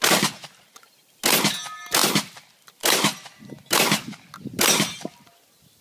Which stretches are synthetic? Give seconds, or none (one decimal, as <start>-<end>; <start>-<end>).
none